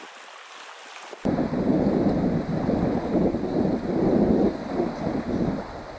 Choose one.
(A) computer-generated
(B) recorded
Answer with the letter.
B